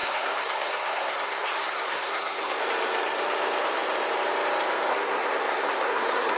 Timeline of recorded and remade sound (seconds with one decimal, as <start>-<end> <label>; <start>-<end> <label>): 0.0-2.6 remade; 2.6-4.9 recorded; 4.9-6.4 remade